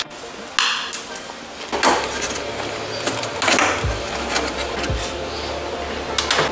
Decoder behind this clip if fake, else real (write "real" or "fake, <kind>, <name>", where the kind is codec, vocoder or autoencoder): real